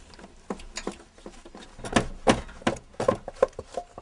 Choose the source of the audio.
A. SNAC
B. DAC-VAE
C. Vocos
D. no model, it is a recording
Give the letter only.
D